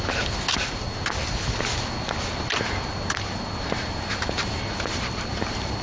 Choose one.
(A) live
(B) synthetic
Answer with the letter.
A